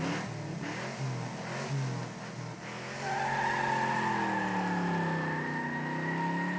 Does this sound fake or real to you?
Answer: real